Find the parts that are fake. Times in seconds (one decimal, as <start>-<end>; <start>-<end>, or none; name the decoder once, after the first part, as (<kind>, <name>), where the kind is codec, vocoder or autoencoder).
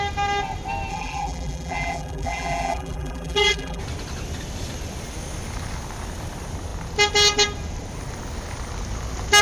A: 0.9-3.8 (vocoder, BigVGAN v2)